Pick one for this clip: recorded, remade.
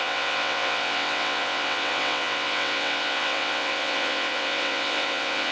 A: remade